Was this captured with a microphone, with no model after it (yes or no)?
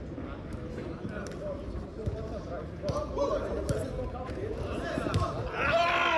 yes